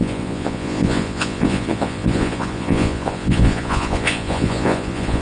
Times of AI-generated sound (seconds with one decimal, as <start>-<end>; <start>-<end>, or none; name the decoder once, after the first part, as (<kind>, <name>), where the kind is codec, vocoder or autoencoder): 0.0-5.2 (vocoder, Vocos)